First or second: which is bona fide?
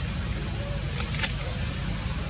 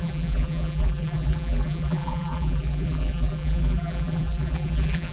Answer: first